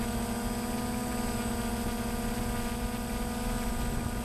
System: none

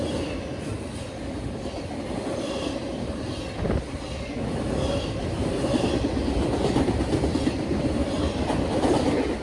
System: none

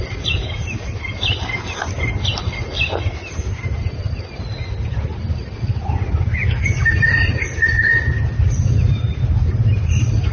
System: none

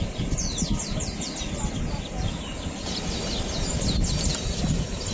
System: none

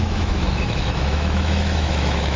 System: autoencoder, DAC-VAE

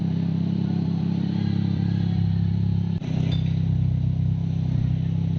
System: vocoder, BigVGAN v2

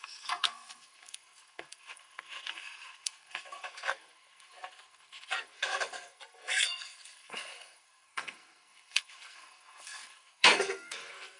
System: codec, SNAC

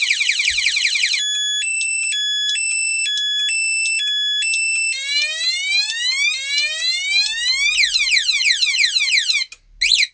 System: none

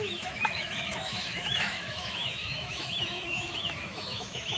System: autoencoder, DAC-VAE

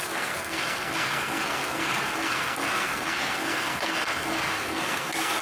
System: codec, SNAC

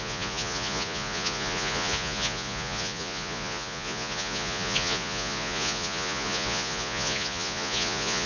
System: vocoder, Vocos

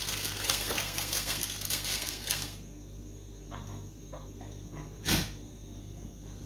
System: codec, SNAC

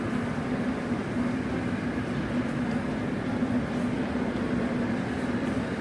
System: none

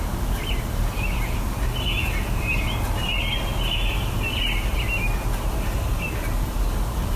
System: none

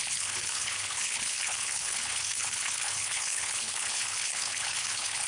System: codec, HILCodec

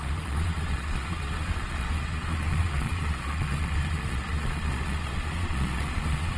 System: vocoder, Vocos